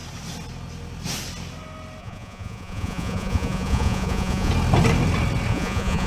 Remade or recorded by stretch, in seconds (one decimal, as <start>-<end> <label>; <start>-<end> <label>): 0.0-2.0 recorded; 2.0-4.5 remade; 4.5-5.5 recorded; 5.5-6.1 remade